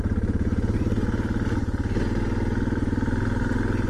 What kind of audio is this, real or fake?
real